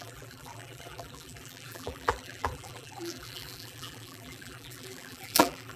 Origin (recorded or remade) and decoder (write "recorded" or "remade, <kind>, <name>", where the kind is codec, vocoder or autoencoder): remade, vocoder, BigVGAN v2